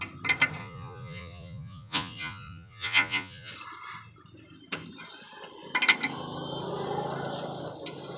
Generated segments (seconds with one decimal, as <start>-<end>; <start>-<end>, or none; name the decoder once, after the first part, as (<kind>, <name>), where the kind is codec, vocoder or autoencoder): 0.6-3.5 (vocoder, Vocos)